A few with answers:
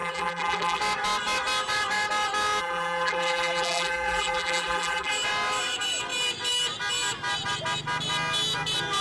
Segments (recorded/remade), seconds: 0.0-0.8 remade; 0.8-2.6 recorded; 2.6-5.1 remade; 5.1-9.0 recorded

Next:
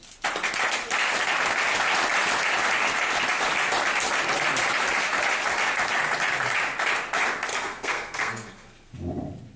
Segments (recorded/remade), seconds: 0.0-7.5 recorded; 7.5-8.9 remade; 8.9-9.6 recorded

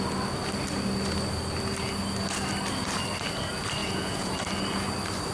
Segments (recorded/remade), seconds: 0.0-3.8 recorded; 3.8-4.3 remade; 4.3-5.3 recorded

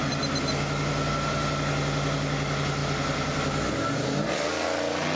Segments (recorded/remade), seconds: 0.0-5.2 recorded

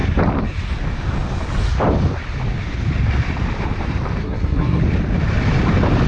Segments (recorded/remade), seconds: 0.0-4.2 recorded; 4.2-4.8 remade; 4.8-6.1 recorded

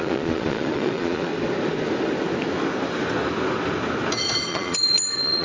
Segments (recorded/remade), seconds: 0.0-1.3 remade; 1.3-4.5 recorded; 4.5-5.4 remade

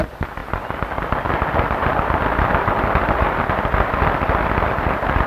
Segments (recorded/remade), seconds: 0.0-5.3 recorded